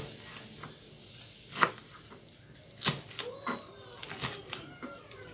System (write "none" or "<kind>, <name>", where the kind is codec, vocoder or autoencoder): none